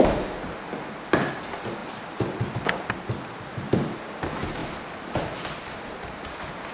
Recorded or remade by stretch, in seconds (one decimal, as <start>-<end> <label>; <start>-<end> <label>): 0.0-6.7 recorded